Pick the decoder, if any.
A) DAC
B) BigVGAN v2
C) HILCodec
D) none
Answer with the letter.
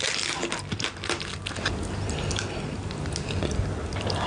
D